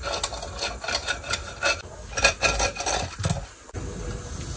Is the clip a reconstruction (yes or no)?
no